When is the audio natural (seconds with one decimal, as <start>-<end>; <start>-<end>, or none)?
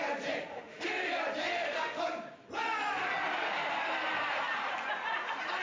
0.0-0.5; 1.1-1.5; 2.0-5.6